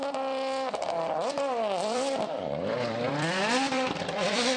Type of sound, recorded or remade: remade